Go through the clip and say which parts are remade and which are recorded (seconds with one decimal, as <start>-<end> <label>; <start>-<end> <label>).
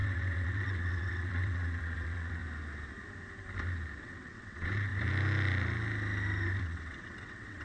0.0-2.4 remade; 2.4-4.0 recorded; 4.0-4.9 remade; 4.9-6.6 recorded; 6.6-7.6 remade